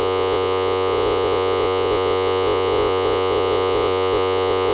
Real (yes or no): no